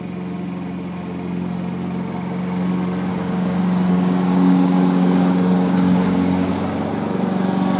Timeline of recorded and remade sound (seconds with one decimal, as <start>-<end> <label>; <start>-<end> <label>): 0.0-3.1 recorded; 3.1-6.5 remade; 6.5-7.8 recorded